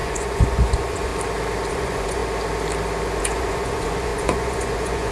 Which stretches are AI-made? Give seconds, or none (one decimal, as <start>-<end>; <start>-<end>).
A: 0.0-1.1; 1.7-2.2; 3.2-5.1